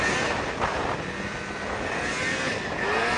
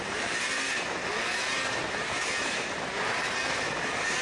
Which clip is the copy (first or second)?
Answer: second